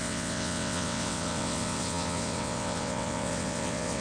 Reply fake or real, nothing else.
fake